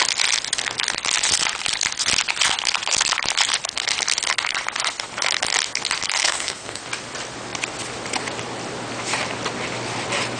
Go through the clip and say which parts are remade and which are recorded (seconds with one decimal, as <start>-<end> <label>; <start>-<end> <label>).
0.0-6.2 recorded; 6.2-6.8 remade; 6.8-10.4 recorded

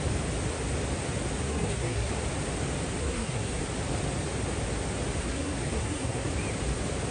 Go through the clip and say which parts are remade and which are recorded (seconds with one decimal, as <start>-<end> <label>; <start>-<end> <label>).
0.0-1.5 recorded; 1.5-2.1 remade; 2.1-3.0 recorded; 3.0-3.6 remade; 3.6-5.2 recorded; 5.2-6.3 remade; 6.3-7.1 recorded

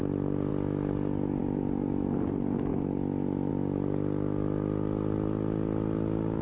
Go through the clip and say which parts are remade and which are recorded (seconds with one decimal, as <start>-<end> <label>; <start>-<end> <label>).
0.0-6.4 recorded

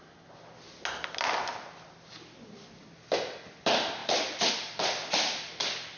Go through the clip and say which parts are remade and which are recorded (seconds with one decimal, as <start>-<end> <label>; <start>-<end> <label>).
0.0-6.0 recorded

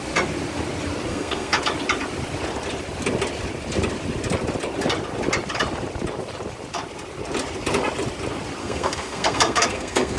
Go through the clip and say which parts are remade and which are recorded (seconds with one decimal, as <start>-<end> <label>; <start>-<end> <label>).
0.0-1.1 recorded; 1.1-1.6 remade; 1.6-8.6 recorded; 8.6-10.2 remade

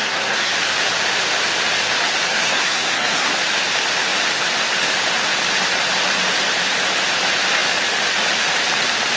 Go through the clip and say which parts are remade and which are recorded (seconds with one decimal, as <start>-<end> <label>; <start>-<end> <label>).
0.0-0.5 remade; 0.5-2.3 recorded; 2.3-3.3 remade; 3.3-9.2 recorded

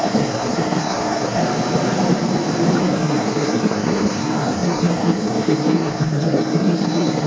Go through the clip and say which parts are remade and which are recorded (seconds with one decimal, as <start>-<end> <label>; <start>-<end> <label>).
0.0-1.4 remade; 1.4-2.8 recorded; 2.8-7.3 remade

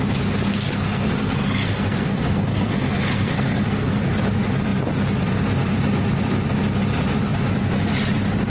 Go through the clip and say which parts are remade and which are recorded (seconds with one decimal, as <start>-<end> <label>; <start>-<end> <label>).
0.0-0.5 recorded; 0.5-4.0 remade; 4.0-8.5 recorded